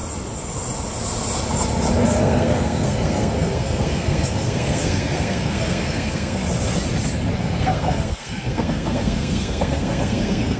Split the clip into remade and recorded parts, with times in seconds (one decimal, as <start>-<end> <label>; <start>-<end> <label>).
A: 0.0-2.2 recorded; 2.2-6.4 remade; 6.4-7.4 recorded; 7.4-10.6 remade